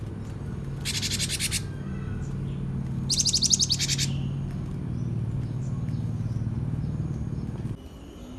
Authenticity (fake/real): real